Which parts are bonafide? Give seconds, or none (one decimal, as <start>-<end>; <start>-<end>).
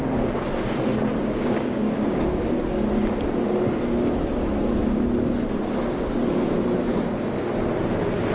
0.0-1.1; 2.6-8.3